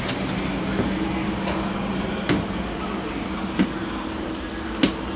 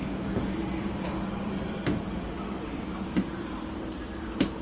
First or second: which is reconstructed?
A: second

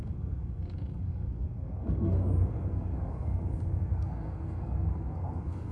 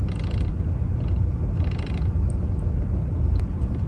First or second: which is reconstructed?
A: first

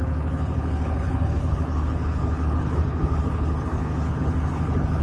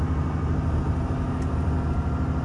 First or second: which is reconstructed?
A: first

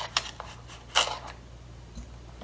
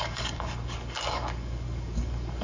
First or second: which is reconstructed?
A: second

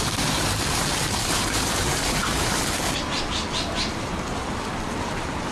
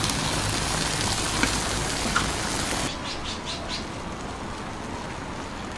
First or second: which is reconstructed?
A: first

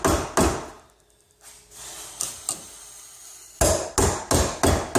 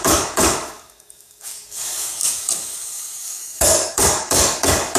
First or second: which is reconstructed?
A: second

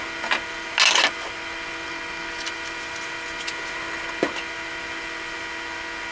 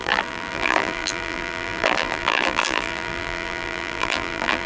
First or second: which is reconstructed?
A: second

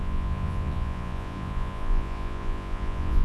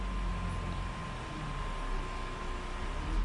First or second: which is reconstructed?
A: first